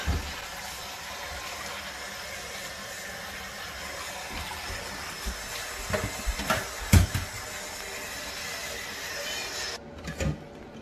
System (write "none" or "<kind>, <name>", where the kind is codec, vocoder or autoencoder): none